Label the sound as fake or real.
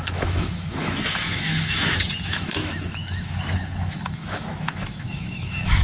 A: fake